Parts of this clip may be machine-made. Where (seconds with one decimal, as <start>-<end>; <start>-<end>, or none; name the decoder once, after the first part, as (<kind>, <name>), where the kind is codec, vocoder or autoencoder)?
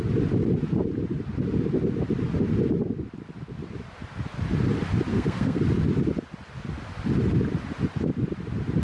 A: 5.1-5.6 (codec, SNAC)